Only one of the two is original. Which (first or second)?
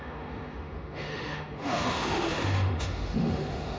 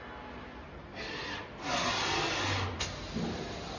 second